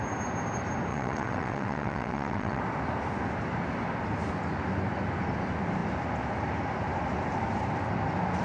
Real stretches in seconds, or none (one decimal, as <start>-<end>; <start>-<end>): 0.0-0.9; 2.6-8.4